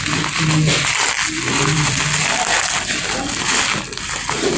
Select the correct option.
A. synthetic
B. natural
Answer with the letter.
B